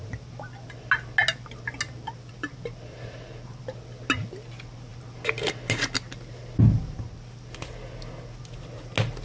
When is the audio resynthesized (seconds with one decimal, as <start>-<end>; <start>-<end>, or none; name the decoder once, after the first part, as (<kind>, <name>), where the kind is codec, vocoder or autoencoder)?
none

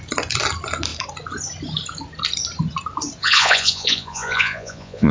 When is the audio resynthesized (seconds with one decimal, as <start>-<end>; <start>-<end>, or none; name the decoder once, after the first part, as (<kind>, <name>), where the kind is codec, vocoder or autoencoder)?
3.2-5.1 (vocoder, Vocos)

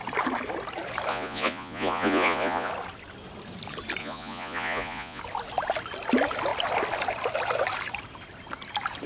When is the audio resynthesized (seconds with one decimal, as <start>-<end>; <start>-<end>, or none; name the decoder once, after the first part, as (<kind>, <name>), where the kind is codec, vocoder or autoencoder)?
1.1-2.7 (vocoder, Vocos); 4.0-5.2

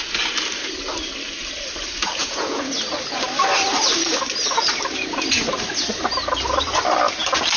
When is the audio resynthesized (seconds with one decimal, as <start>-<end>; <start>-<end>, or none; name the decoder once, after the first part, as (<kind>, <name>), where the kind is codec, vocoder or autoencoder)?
2.2-2.7 (vocoder, Vocos)

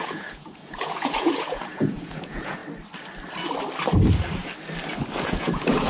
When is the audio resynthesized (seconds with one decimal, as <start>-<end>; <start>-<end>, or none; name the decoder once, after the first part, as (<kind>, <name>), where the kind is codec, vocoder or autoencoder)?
0.0-2.6 (vocoder, Vocos); 5.2-5.9